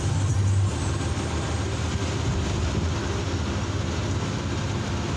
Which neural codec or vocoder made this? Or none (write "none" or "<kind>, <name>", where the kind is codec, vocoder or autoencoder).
none